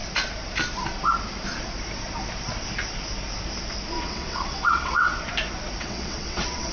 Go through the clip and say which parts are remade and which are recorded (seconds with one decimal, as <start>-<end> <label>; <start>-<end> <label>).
0.0-4.0 recorded; 4.0-5.1 remade; 5.1-5.8 recorded; 5.8-6.7 remade